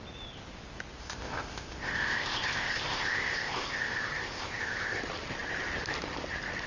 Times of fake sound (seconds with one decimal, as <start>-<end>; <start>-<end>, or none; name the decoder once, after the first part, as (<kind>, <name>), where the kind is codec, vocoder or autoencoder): 1.0-5.0 (codec, ZipCodec)